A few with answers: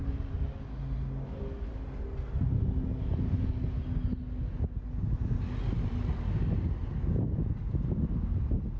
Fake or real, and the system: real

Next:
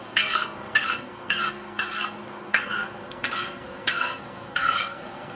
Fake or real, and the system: fake, codec, SNAC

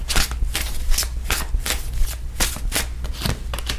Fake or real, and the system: real